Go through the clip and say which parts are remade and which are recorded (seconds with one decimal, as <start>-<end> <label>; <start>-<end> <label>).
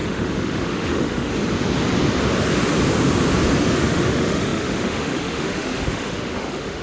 0.0-1.3 remade; 1.3-3.8 recorded; 3.8-6.8 remade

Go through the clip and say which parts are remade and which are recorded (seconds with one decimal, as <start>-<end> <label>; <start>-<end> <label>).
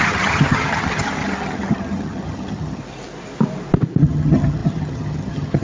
0.0-2.8 remade; 2.8-4.0 recorded; 4.0-5.6 remade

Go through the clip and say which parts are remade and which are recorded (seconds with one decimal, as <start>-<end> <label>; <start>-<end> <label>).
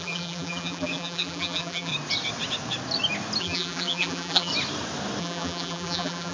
0.0-1.9 remade; 1.9-3.4 recorded; 3.4-4.5 remade; 4.5-5.2 recorded; 5.2-6.3 remade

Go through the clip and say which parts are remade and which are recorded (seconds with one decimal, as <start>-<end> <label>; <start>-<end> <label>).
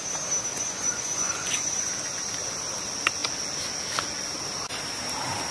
0.0-0.5 recorded; 0.5-1.9 remade; 1.9-5.5 recorded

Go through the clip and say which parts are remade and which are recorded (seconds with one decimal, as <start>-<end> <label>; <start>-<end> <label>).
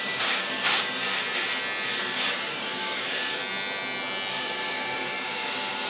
0.0-1.0 remade; 1.0-2.0 recorded; 2.0-3.4 remade; 3.4-4.3 recorded; 4.3-5.9 remade